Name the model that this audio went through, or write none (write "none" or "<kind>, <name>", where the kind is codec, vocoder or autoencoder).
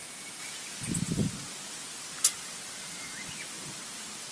none